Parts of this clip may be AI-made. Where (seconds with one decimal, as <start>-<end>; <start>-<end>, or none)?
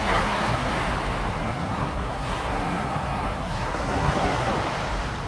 0.0-0.7; 1.3-4.5